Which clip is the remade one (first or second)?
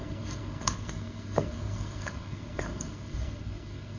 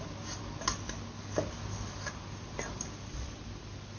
first